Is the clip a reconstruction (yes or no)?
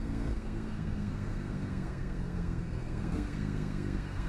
yes